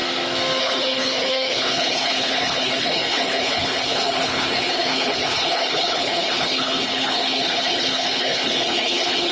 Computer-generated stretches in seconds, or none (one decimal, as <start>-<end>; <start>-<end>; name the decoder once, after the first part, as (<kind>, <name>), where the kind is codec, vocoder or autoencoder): 0.6-9.3 (codec, HILCodec)